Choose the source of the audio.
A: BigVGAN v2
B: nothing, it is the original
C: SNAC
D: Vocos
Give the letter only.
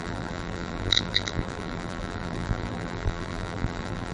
A